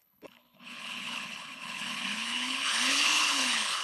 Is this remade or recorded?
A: remade